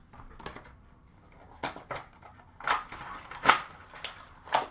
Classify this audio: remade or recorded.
recorded